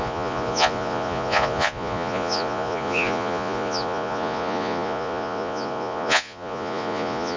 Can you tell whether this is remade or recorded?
remade